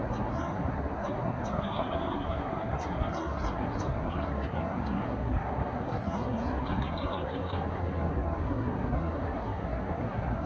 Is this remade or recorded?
remade